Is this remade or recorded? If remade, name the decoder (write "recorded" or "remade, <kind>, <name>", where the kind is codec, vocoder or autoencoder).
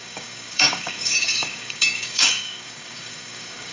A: remade, codec, DAC